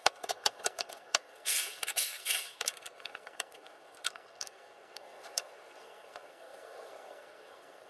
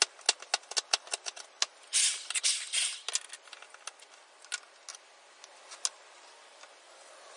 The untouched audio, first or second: second